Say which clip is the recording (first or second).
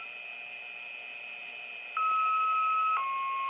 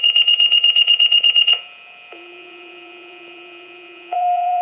first